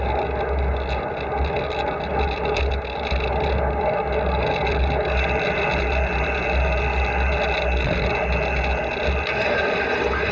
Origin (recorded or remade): recorded